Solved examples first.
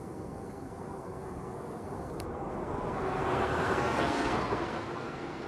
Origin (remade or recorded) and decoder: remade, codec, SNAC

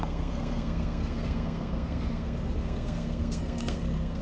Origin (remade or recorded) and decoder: remade, codec, SNAC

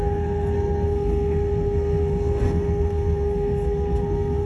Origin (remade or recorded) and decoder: remade, codec, SNAC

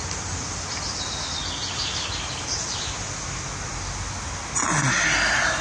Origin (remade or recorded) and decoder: recorded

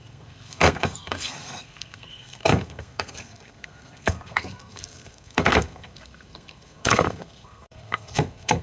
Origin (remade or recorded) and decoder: remade, codec, SNAC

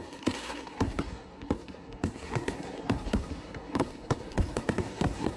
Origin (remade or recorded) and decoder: remade, codec, SNAC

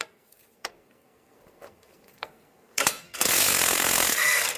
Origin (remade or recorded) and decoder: remade, codec, SNAC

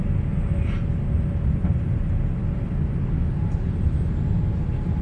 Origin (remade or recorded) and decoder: recorded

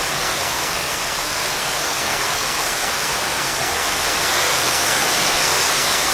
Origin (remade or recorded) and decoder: remade, codec, SNAC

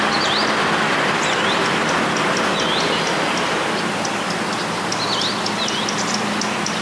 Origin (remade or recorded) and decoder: recorded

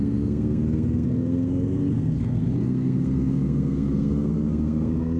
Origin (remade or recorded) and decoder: remade, codec, SNAC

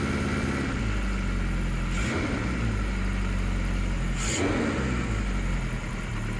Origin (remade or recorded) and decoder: recorded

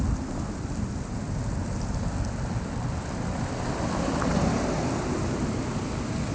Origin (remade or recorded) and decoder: recorded